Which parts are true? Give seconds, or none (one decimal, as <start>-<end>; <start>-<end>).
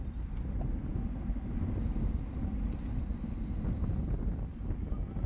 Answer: 0.0-5.3